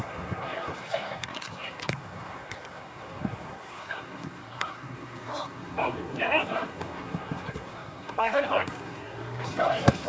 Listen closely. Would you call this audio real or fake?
fake